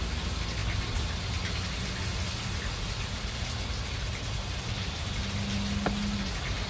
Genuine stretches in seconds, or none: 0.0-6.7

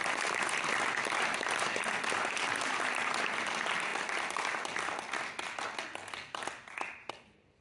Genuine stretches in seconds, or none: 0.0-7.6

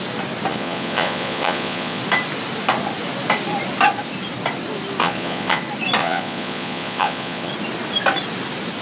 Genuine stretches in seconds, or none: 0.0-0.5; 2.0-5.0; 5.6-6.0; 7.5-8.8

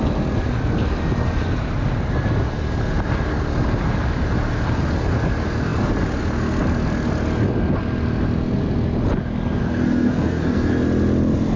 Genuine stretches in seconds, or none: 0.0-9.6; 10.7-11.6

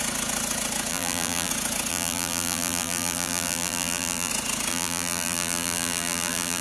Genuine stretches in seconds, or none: 0.0-0.9; 1.5-1.9; 4.3-4.7

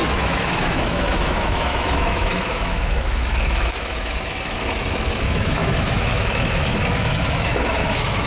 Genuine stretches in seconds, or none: none

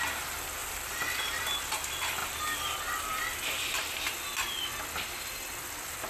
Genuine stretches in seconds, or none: 0.0-0.6; 1.6-6.1

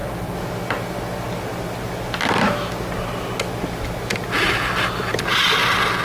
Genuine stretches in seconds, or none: 0.0-6.0